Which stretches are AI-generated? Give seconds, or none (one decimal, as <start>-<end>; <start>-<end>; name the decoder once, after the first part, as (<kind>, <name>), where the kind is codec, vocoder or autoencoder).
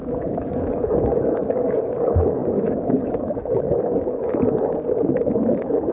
0.0-5.9 (codec, DAC)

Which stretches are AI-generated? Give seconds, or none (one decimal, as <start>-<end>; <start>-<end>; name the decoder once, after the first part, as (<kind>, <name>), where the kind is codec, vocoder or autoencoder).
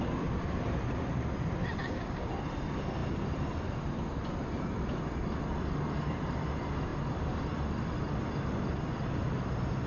1.8-2.3 (codec, DAC)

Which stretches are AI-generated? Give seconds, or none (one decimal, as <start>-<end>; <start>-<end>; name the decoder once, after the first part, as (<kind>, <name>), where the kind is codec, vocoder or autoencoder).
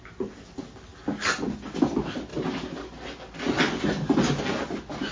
none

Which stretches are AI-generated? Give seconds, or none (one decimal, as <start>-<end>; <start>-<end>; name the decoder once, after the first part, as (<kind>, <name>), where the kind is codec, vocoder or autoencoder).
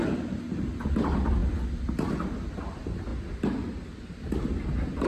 none